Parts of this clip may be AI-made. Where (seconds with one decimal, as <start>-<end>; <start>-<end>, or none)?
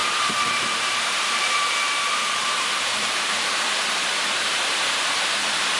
0.0-5.8